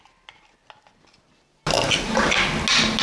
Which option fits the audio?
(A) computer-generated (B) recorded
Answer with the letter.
B